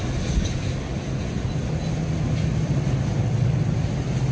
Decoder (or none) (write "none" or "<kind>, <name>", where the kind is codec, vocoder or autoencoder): none